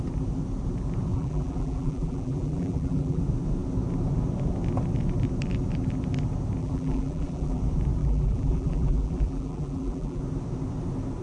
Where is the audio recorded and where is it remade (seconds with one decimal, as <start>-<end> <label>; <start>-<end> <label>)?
0.0-1.1 recorded; 1.1-3.2 remade; 3.2-6.6 recorded; 6.6-7.6 remade; 7.6-8.0 recorded; 8.0-10.2 remade; 10.2-11.2 recorded

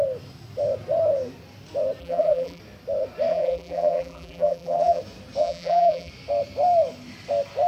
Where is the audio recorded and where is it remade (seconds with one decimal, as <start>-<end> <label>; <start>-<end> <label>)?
0.0-2.0 recorded; 2.0-2.6 remade; 2.6-3.3 recorded; 3.3-5.0 remade; 5.0-5.4 recorded; 5.4-6.1 remade; 6.1-7.7 recorded

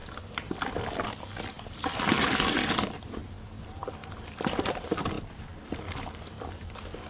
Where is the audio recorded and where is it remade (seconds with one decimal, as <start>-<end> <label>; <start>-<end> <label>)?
0.0-5.5 remade; 5.5-6.3 recorded; 6.3-7.1 remade

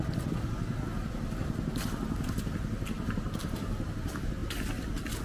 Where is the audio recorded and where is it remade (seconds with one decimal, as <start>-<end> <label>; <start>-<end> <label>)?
0.0-3.4 recorded; 3.4-3.9 remade; 3.9-5.2 recorded

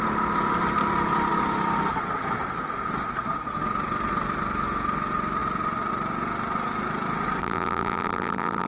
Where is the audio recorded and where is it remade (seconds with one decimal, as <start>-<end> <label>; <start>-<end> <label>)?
0.0-7.4 recorded; 7.4-8.7 remade

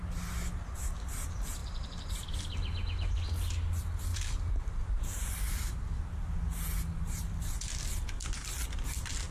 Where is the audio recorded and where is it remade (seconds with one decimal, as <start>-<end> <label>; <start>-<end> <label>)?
0.0-4.1 recorded; 4.1-6.0 remade; 6.0-9.3 recorded

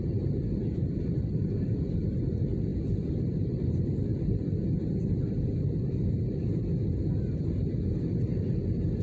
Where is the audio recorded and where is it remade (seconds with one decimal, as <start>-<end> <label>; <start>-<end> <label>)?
0.0-9.0 remade

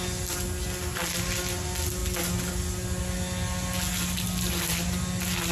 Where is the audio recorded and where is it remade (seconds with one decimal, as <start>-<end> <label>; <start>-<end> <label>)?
0.0-5.5 recorded